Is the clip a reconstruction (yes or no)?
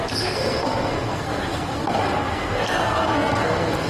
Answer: yes